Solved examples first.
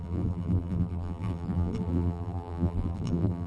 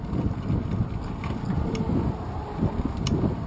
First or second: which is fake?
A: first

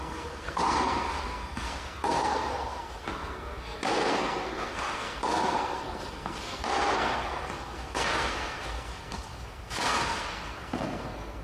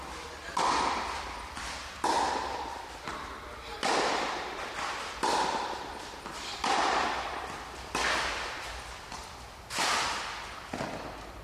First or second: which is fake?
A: first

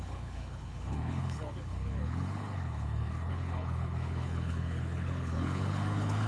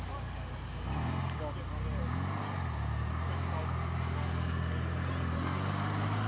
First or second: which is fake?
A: first